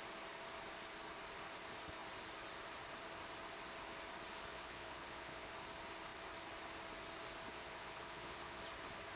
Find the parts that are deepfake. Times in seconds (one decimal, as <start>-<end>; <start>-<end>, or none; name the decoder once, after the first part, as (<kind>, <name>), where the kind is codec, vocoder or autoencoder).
4.5-5.5 (vocoder, Vocos); 7.5-8.6